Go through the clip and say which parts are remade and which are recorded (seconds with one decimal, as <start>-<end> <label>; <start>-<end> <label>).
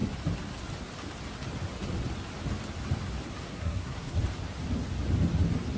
0.0-3.5 recorded; 3.5-4.2 remade; 4.2-5.8 recorded